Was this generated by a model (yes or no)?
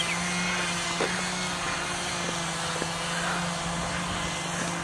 no